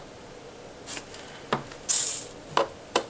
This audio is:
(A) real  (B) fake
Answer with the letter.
A